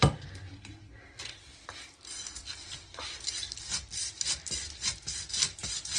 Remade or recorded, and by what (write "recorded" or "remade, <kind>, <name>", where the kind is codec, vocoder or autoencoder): recorded